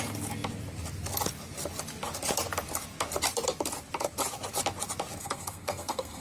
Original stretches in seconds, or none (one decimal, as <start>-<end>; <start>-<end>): 0.0-5.2